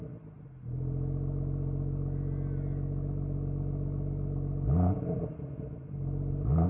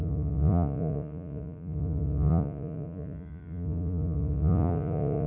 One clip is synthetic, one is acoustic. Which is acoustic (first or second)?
first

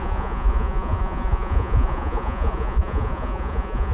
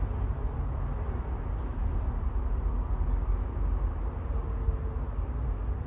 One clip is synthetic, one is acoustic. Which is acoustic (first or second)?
second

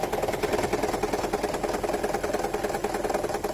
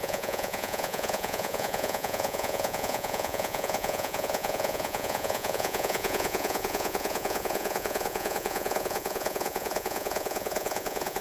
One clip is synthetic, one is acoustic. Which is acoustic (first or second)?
first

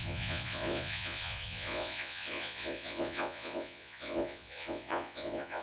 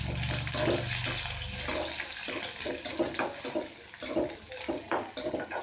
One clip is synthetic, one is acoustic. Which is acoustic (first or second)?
second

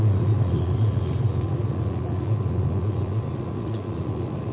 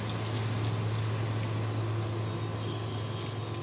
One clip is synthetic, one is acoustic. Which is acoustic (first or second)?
second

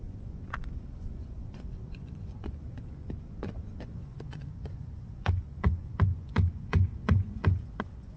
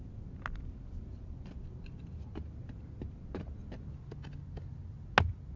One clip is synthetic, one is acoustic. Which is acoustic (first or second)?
second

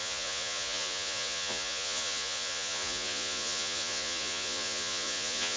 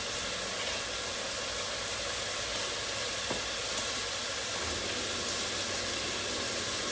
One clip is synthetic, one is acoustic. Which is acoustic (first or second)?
second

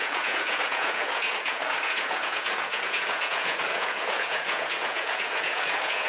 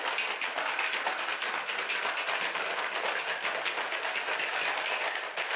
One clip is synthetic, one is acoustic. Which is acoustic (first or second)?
second